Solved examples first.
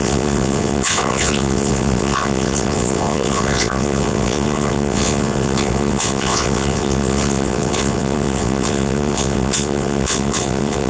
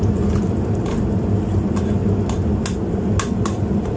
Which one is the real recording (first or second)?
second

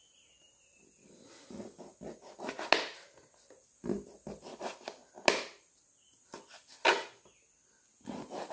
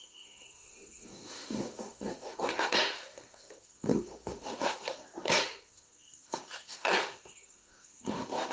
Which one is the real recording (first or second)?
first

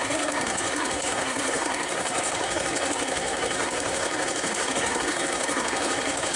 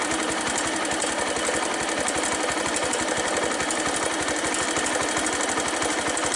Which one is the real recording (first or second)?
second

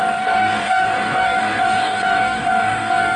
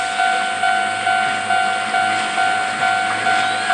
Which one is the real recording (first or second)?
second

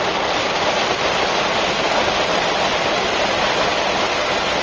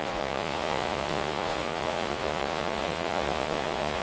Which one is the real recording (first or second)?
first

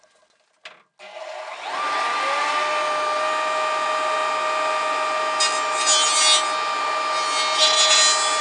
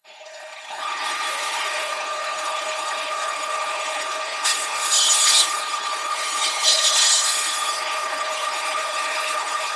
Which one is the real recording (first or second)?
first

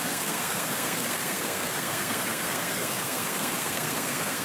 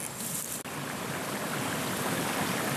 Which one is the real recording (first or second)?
second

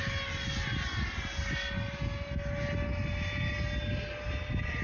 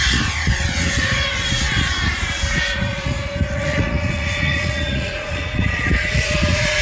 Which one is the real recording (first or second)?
first